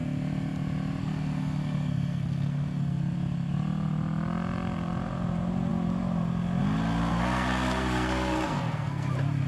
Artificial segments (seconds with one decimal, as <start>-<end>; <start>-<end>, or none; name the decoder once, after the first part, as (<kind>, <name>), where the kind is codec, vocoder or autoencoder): 1.0-3.0 (codec, SNAC); 7.1-9.1

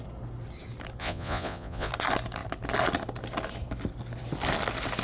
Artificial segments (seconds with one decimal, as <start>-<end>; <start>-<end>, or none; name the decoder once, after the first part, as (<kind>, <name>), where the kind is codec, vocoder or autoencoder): 1.0-1.9 (vocoder, Vocos)

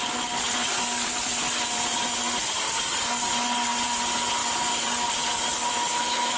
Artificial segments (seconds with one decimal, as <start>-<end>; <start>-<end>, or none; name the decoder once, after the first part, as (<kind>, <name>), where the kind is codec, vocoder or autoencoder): 5.7-6.4 (autoencoder, DAC-VAE)

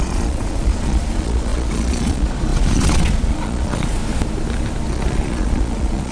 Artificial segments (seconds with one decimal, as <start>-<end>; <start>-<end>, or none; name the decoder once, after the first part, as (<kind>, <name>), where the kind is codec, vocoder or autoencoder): 0.0-4.0 (vocoder, Vocos); 4.9-6.1

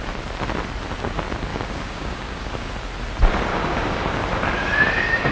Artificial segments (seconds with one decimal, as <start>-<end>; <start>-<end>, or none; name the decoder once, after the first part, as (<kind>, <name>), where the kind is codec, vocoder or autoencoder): 1.5-2.7 (codec, DAC); 3.5-4.1

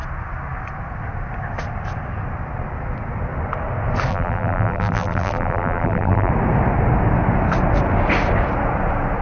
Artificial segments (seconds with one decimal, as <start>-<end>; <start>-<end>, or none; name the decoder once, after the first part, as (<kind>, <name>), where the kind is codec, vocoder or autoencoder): 4.1-6.3 (vocoder, BigVGAN v2)

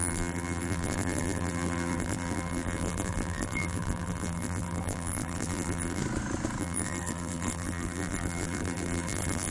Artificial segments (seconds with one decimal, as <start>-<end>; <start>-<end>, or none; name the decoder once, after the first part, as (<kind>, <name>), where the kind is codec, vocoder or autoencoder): 0.0-6.0 (vocoder, BigVGAN v2); 6.6-9.5